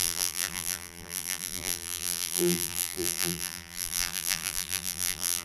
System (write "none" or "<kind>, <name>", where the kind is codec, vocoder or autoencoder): vocoder, BigVGAN v2